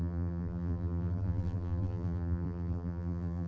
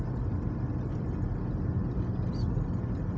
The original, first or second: second